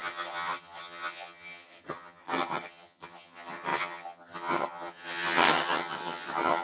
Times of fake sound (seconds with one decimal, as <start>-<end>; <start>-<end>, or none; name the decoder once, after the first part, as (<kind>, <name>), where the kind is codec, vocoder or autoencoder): 0.0-6.6 (vocoder, HiFi-GAN)